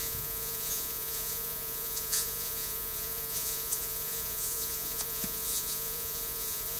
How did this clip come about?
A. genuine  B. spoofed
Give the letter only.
B